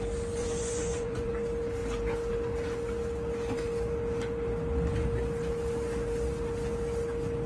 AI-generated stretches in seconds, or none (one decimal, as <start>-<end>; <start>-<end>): 0.4-1.3